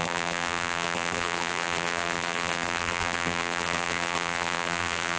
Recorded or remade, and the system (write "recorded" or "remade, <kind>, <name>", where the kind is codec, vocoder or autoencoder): remade, vocoder, BigVGAN v2